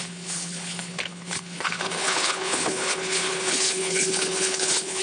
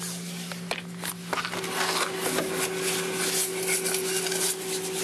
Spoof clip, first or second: first